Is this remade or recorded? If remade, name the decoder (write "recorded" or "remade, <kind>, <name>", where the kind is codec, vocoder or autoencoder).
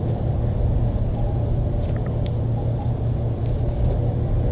recorded